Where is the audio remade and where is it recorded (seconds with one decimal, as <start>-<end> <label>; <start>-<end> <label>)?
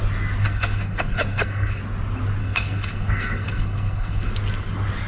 0.0-0.4 recorded; 0.4-1.8 remade; 1.8-2.4 recorded; 2.4-4.3 remade; 4.3-5.1 recorded